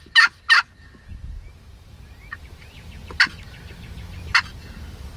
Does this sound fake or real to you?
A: real